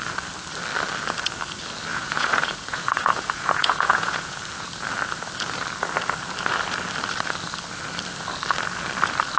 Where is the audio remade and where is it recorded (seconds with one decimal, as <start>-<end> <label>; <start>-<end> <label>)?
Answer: 0.0-1.9 recorded; 1.9-4.4 remade; 4.4-9.4 recorded